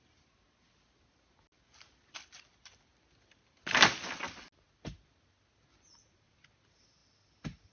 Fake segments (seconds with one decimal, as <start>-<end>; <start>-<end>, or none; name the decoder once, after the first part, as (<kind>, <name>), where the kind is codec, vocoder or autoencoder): none